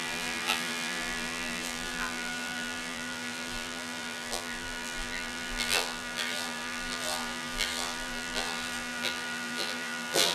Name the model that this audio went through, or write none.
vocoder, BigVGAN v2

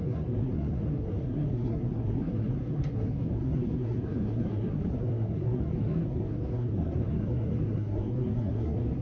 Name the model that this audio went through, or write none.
codec, SNAC